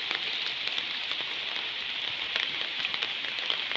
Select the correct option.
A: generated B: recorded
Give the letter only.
B